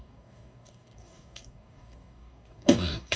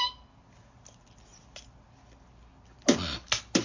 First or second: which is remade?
first